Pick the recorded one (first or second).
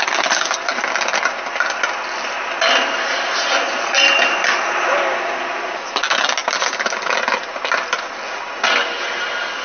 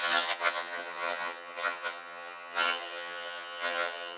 first